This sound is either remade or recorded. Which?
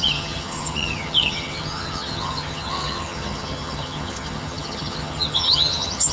remade